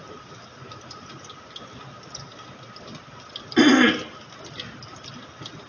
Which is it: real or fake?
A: real